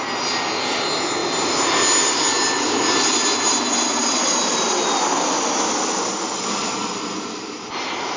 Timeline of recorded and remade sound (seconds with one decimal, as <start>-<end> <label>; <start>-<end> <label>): 0.0-8.2 recorded